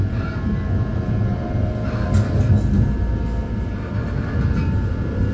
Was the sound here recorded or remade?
recorded